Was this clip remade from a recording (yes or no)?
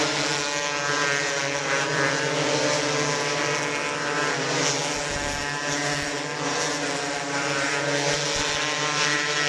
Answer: no